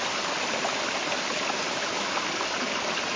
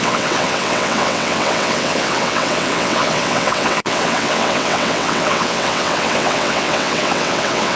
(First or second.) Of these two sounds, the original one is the first